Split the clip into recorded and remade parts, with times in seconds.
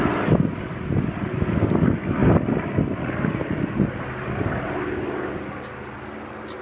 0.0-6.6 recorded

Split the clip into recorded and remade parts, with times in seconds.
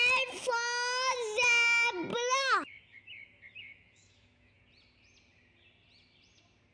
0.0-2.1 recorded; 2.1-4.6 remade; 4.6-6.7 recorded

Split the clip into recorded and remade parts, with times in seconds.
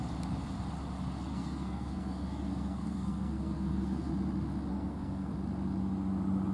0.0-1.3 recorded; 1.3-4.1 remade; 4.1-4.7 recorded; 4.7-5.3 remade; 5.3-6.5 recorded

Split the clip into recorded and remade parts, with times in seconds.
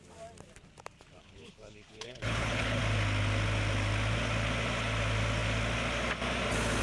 0.0-1.2 recorded; 1.2-2.8 remade; 2.8-6.8 recorded